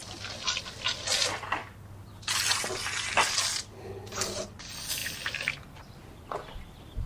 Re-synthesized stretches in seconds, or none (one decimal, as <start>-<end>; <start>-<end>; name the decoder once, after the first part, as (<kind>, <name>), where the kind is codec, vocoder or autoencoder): none